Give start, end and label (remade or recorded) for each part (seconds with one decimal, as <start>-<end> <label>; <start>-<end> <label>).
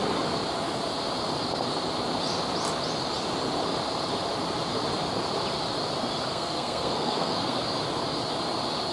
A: 0.0-6.3 recorded; 6.3-7.6 remade; 7.6-8.9 recorded